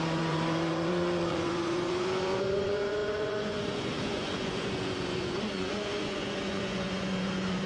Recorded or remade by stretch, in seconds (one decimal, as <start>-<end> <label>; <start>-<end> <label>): 0.0-7.7 remade